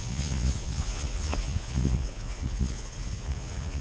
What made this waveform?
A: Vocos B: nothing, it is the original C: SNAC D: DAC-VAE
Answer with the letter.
A